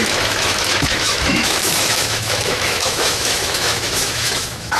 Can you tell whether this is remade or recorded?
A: remade